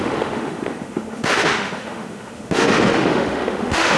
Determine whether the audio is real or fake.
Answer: fake